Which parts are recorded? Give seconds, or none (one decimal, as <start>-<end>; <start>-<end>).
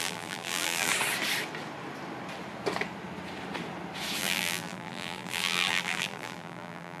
0.9-4.2